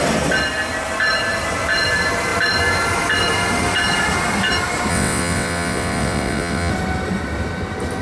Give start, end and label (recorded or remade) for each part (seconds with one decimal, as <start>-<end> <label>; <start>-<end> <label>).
0.0-4.9 recorded; 4.9-6.7 remade; 6.7-8.0 recorded